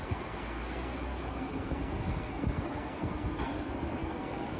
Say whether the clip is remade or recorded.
remade